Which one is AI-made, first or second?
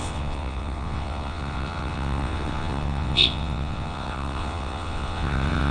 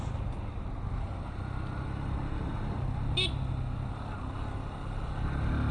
first